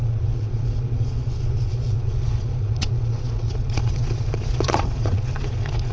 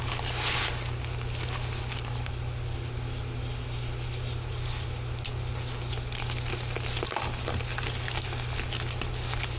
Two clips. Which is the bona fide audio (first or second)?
second